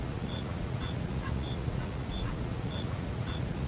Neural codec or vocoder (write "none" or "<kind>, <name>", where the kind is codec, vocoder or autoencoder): vocoder, Vocos